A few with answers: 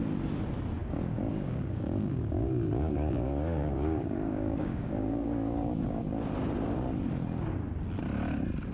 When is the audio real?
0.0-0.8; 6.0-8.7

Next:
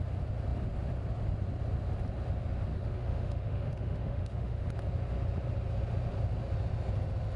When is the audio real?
0.0-2.7; 4.7-7.4

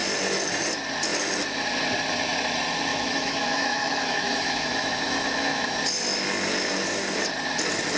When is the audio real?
0.0-2.9; 5.8-8.0

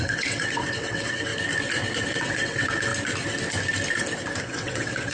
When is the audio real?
1.3-2.1; 2.9-4.4

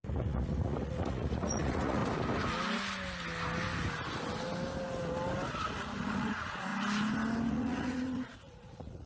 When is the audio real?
2.0-6.0; 6.7-7.5

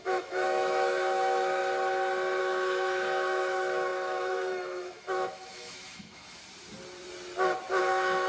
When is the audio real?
1.6-2.4; 6.4-7.8

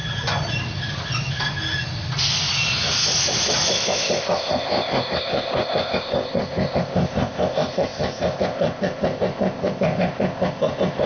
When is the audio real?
0.0-3.7